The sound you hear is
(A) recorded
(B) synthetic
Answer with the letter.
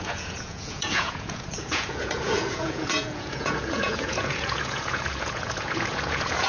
B